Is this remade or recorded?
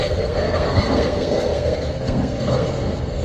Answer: remade